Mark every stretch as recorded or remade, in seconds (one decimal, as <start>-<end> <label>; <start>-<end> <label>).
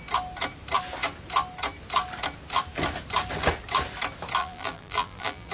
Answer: 0.0-4.4 recorded; 4.4-5.5 remade